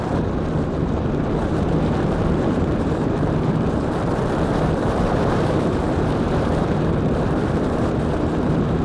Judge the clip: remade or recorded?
remade